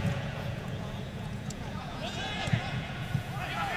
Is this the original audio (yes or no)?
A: no